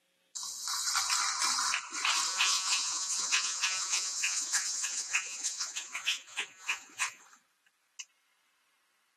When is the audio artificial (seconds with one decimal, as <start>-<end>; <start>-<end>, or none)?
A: 2.3-7.2